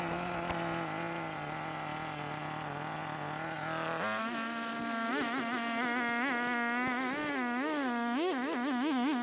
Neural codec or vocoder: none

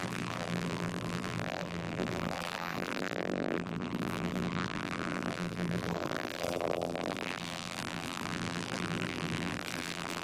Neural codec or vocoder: vocoder, BigVGAN v2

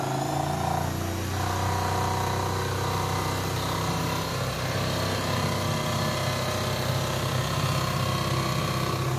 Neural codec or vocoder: none